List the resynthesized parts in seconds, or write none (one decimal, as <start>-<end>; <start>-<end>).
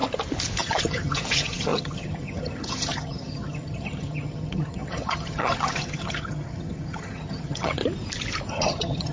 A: 0.6-7.8; 8.5-9.1